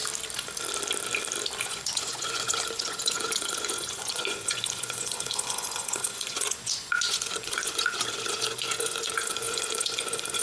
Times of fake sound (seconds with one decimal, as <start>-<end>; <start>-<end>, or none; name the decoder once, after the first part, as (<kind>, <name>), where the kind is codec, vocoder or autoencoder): 1.6-10.4 (vocoder, Vocos)